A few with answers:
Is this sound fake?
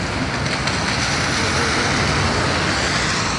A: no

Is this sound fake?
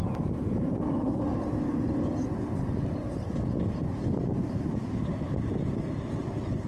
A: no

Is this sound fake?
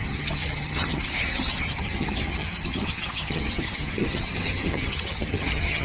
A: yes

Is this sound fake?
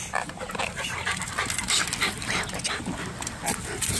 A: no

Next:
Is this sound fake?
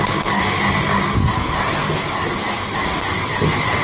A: no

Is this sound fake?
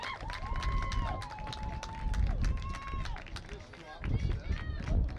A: no